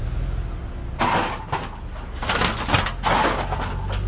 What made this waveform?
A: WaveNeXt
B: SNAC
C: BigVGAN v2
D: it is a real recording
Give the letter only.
D